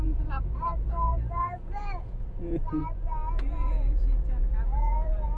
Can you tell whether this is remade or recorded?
remade